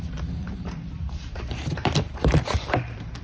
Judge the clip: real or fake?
fake